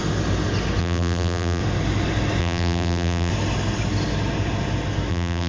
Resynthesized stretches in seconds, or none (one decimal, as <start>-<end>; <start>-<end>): 0.8-1.6; 2.4-3.3; 5.1-5.5